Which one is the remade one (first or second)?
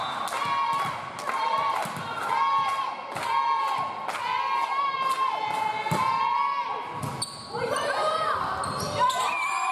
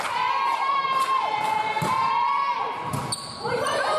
second